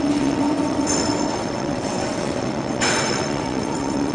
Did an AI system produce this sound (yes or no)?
yes